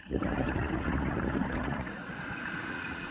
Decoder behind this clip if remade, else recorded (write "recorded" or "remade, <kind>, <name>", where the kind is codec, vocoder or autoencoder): remade, vocoder, Vocos